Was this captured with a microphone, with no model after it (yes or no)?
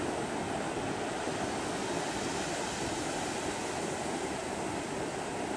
yes